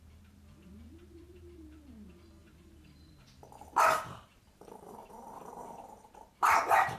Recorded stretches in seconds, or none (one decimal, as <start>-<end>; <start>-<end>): none